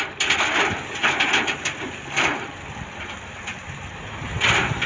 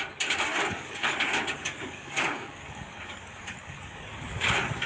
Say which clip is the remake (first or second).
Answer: second